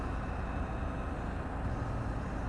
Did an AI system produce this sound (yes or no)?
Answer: no